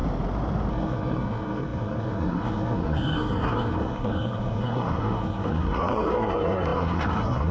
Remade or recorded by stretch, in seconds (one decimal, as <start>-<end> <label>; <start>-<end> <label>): 0.0-0.7 recorded; 0.7-7.5 remade